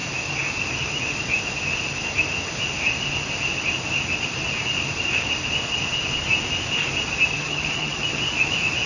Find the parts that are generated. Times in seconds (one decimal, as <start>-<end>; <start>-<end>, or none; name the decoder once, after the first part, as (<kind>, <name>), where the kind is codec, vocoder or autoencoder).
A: 7.3-8.2 (vocoder, HiFi-GAN)